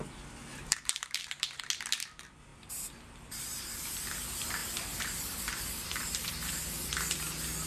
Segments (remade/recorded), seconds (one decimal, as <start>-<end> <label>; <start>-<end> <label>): 0.0-0.5 recorded; 0.5-1.6 remade; 1.6-2.5 recorded; 2.5-3.8 remade; 3.8-4.6 recorded; 4.6-7.2 remade; 7.2-7.7 recorded

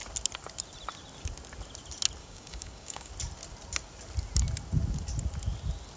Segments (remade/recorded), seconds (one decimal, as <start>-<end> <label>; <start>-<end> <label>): 0.0-2.2 recorded; 2.2-3.1 remade; 3.1-6.0 recorded